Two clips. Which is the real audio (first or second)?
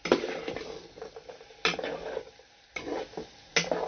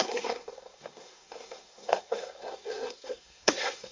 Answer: first